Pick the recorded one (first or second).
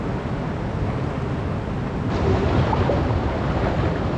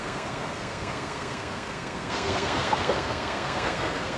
first